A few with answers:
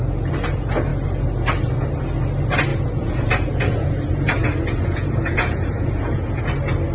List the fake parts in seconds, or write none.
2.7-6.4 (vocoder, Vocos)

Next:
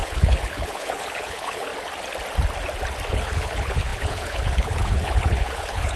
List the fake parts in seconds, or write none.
0.0-1.7 (codec, HILCodec); 3.1-6.0